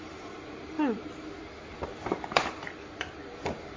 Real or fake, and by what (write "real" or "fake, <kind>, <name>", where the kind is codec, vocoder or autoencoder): fake, vocoder, BigVGAN v2